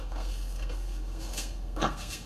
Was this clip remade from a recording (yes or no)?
yes